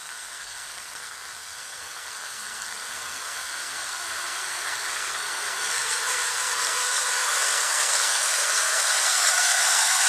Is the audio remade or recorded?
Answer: remade